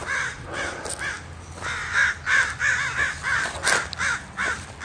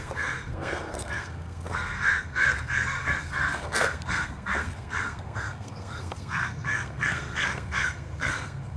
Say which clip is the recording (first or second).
first